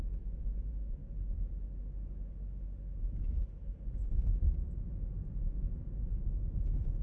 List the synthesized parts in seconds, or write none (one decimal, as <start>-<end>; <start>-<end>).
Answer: 0.0-1.0; 4.9-7.0